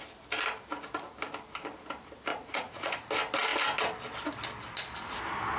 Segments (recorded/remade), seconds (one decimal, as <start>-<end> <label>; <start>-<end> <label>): 0.0-2.3 recorded; 2.3-3.1 remade; 3.1-5.6 recorded

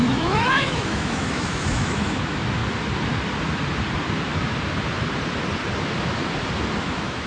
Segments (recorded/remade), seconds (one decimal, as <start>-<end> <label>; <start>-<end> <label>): 0.0-2.6 remade; 2.6-6.8 recorded; 6.8-7.3 remade

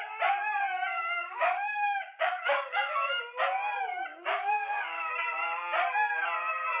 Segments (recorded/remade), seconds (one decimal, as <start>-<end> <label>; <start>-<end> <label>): 0.0-0.9 recorded; 0.9-3.2 remade; 3.2-4.1 recorded; 4.1-5.1 remade; 5.1-6.8 recorded

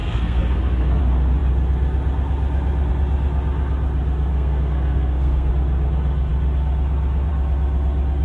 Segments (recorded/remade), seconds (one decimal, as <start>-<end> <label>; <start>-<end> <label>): 0.0-1.0 remade; 1.0-4.3 recorded; 4.3-5.5 remade; 5.5-8.2 recorded

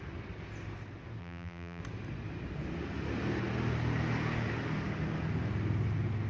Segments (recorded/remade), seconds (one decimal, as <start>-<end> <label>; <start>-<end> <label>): 0.0-1.2 recorded; 1.2-1.8 remade; 1.8-6.3 recorded

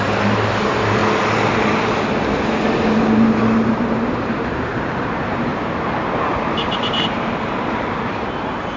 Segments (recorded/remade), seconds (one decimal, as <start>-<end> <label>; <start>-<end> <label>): 0.0-1.0 remade; 1.0-3.7 recorded; 3.7-5.5 remade; 5.5-6.1 recorded; 6.1-8.8 remade

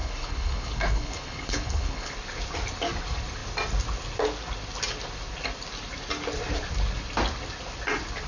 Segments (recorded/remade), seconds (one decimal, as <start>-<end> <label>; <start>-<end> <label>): 0.0-2.1 remade; 2.1-8.3 recorded

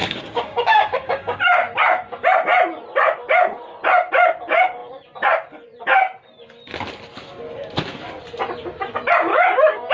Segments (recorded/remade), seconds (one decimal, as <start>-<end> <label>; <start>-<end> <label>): 0.0-1.4 remade; 1.4-9.3 recorded; 9.3-9.9 remade